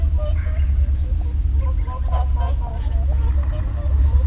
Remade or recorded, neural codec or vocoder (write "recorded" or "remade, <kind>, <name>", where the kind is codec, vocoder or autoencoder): recorded